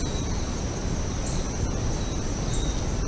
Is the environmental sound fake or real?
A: real